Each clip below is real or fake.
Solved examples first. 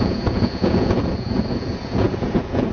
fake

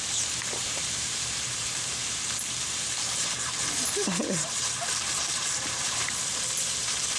fake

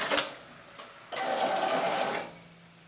real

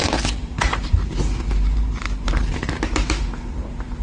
fake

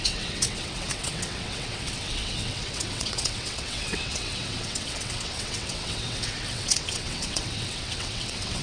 fake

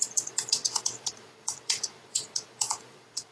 fake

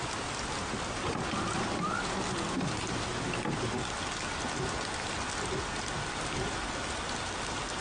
real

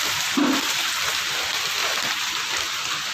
real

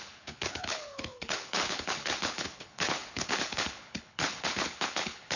fake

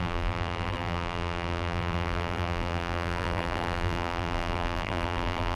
fake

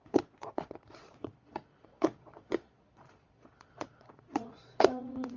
fake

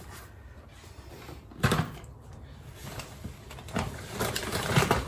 fake